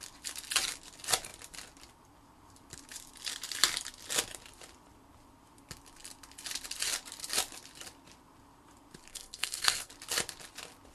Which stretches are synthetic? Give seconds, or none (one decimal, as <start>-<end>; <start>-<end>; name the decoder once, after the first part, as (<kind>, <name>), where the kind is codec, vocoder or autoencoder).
9.1-9.9 (codec, SNAC)